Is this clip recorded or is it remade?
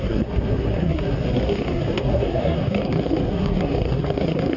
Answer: remade